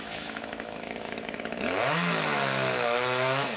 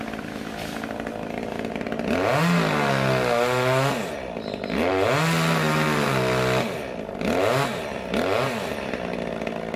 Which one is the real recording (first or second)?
second